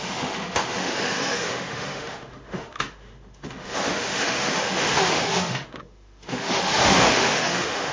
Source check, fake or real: fake